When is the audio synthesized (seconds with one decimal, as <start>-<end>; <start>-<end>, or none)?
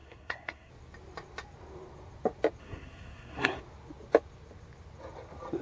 0.0-0.7; 2.6-3.6